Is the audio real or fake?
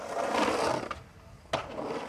real